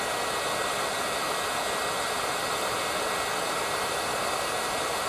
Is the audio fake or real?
real